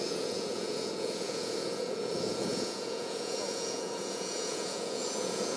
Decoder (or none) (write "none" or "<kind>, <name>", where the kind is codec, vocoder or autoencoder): vocoder, Vocos